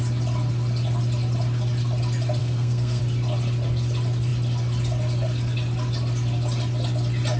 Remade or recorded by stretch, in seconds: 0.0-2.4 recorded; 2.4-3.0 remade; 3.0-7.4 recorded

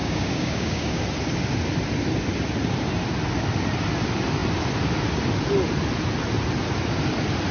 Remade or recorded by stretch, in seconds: 0.0-1.0 remade; 1.0-7.5 recorded

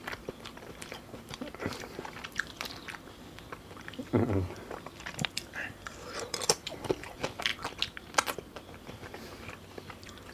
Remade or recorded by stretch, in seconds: 0.0-7.5 remade; 7.5-8.8 recorded; 8.8-10.3 remade

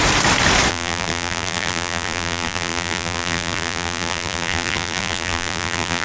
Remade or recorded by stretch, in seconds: 0.0-0.7 recorded; 0.7-6.0 remade

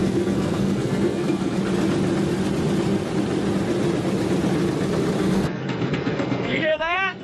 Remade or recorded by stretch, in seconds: 0.0-1.6 remade; 1.6-5.2 recorded; 5.2-7.2 remade

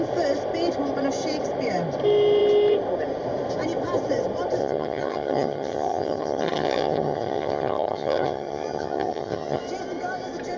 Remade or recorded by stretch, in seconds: 0.0-4.6 recorded; 4.6-9.6 remade; 9.6-10.6 recorded

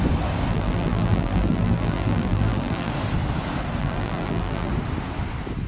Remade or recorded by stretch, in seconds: 0.0-0.5 recorded; 0.5-2.9 remade; 2.9-3.8 recorded; 3.8-4.7 remade; 4.7-5.7 recorded